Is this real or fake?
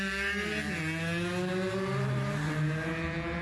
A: real